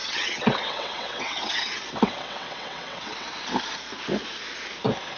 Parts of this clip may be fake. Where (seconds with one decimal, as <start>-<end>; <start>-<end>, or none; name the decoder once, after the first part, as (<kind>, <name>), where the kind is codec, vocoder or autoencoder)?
0.0-3.3 (vocoder, WaveNeXt)